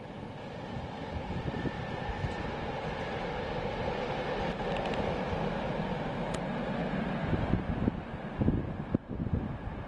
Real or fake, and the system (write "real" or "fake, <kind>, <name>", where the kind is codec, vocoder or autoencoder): real